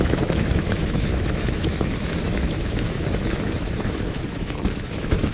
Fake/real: fake